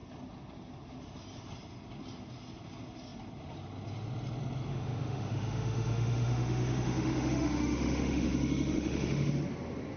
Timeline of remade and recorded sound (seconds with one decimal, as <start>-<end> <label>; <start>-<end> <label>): 0.0-4.7 recorded; 4.7-9.3 remade; 9.3-10.0 recorded